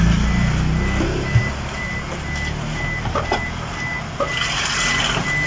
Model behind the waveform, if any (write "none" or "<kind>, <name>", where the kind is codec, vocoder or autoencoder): none